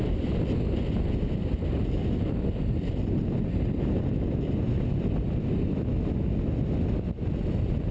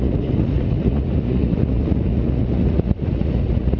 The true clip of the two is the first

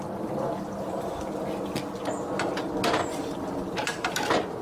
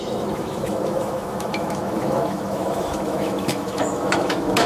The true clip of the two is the first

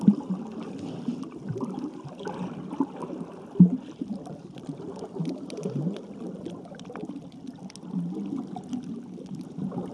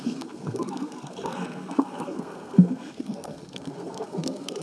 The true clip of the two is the first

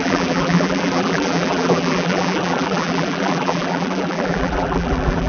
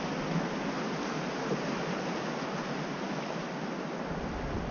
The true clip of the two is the second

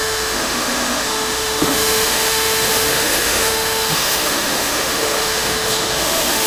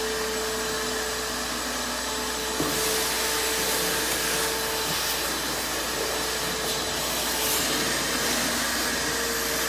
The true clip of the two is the second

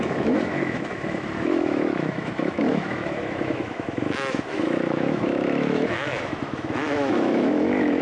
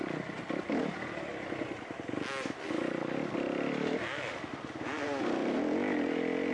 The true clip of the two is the second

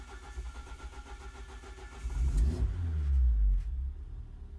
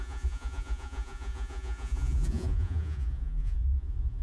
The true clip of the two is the first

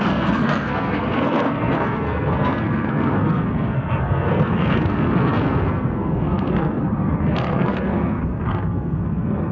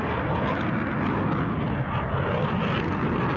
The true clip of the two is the second